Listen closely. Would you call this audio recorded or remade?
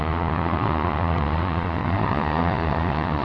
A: remade